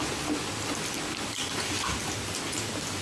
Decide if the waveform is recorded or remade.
recorded